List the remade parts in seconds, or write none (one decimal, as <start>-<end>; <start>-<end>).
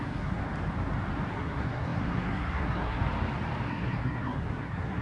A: 0.0-0.4; 1.3-3.0; 3.7-5.0